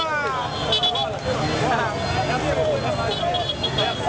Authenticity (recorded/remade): recorded